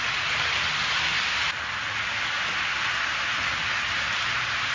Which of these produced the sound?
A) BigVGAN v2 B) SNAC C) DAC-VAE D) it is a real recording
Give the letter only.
D